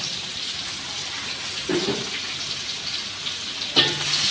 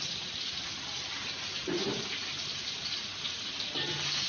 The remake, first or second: second